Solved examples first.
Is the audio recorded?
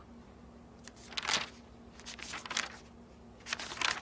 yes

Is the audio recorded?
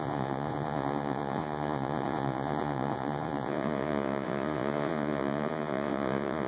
no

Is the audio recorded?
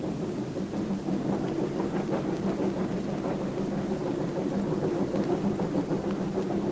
yes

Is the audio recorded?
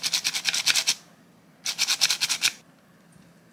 yes